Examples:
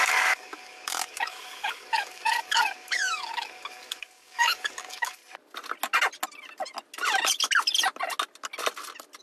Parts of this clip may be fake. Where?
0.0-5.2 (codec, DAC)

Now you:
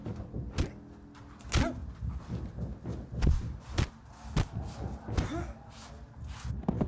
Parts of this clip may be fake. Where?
none

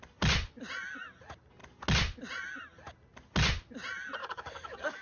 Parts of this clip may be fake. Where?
4.2-5.0 (codec, DAC)

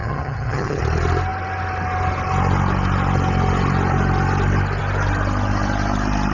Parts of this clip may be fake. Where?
0.0-0.8 (vocoder, HiFi-GAN)

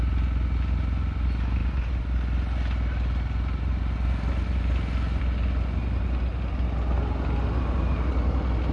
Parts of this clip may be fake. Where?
none

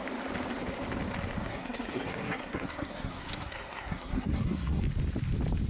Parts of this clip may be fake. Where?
1.4-4.8 (codec, SNAC)

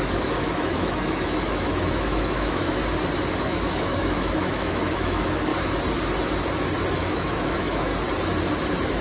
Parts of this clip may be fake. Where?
0.0-2.8 (autoencoder, DAC-VAE); 3.4-5.5; 6.9-7.9

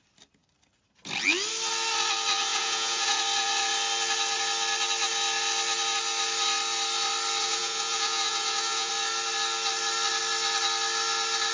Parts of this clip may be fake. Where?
2.5-3.2 (vocoder, Vocos); 7.4-8.9